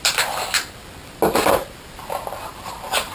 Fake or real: real